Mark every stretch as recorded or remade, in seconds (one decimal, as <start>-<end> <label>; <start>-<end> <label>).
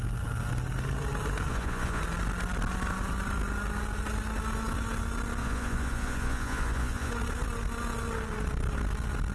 0.0-1.5 recorded; 1.5-2.0 remade; 2.0-5.4 recorded; 5.4-7.1 remade; 7.1-9.3 recorded